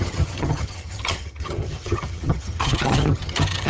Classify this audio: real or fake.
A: fake